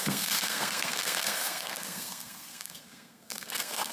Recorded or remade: remade